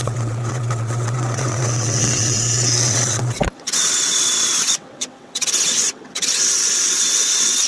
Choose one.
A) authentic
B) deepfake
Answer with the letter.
B